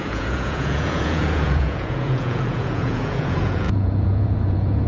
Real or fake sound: fake